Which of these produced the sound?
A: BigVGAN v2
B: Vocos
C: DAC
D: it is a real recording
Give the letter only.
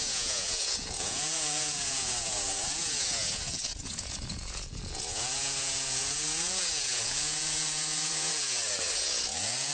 B